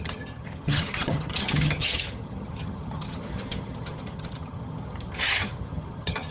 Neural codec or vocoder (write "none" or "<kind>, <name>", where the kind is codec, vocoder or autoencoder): vocoder, HiFi-GAN